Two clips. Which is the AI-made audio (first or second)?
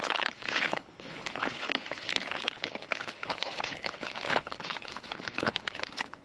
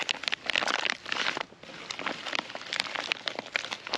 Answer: first